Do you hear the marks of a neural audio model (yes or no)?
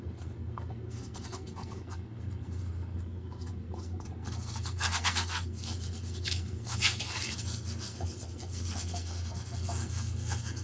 yes